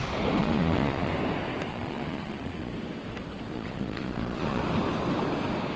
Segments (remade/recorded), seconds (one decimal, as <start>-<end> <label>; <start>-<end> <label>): 0.0-0.4 recorded; 0.4-1.1 remade; 1.1-1.7 recorded; 1.7-2.7 remade; 2.7-3.5 recorded; 3.5-4.6 remade; 4.6-5.8 recorded